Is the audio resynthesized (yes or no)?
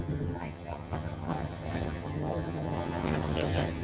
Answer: yes